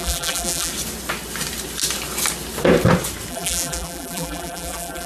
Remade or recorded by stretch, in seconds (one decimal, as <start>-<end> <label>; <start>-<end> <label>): 0.0-0.7 remade; 0.7-3.3 recorded; 3.3-5.1 remade